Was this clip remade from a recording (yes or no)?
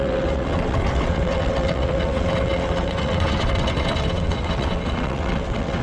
yes